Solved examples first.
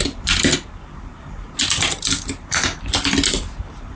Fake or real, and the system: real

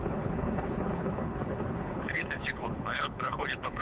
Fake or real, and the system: fake, codec, HILCodec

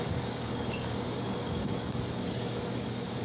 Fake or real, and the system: fake, codec, DAC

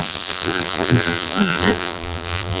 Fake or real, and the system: fake, vocoder, BigVGAN v2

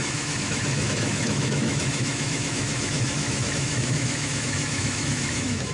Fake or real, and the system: fake, autoencoder, DAC-VAE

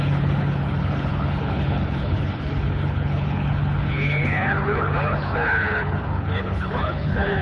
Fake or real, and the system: fake, codec, HILCodec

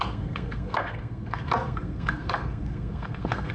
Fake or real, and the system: fake, codec, SNAC